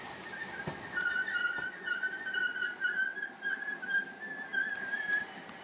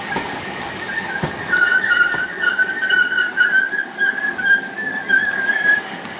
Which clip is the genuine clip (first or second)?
first